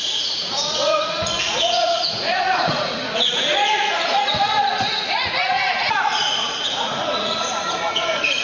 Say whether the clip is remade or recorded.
remade